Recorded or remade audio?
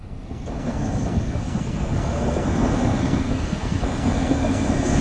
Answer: remade